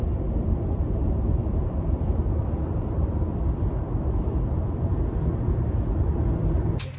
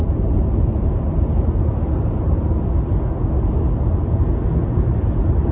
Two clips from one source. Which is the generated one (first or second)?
first